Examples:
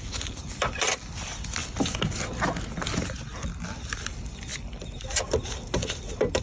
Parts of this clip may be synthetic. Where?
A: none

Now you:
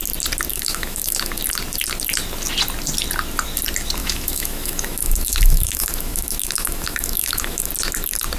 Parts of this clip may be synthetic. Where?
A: 0.5-1.3 (autoencoder, DAC-VAE); 4.0-7.7

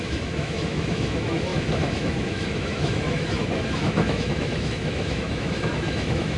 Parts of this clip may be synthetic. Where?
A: 0.0-6.4 (autoencoder, DAC-VAE)

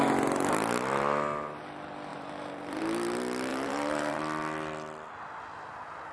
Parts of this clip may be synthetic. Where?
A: 2.1-2.8 (vocoder, BigVGAN v2); 3.5-4.2

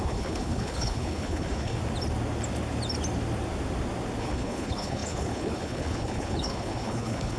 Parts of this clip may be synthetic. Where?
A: 0.0-1.8 (codec, HILCodec); 4.2-7.4